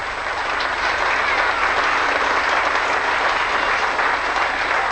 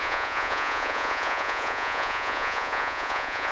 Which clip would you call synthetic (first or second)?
second